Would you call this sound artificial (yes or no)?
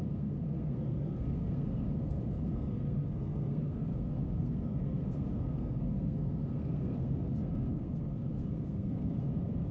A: yes